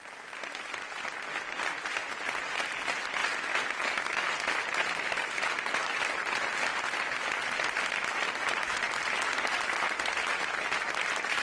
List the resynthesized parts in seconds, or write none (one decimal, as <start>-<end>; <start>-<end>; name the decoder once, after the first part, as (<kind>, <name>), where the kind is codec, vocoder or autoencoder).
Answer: none